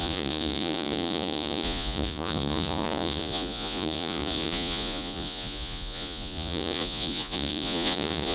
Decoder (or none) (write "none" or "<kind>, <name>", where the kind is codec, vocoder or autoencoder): vocoder, Vocos